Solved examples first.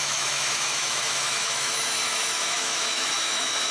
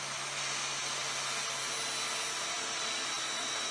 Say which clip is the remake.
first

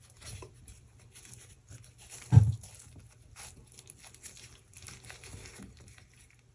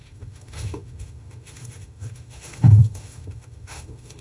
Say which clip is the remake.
second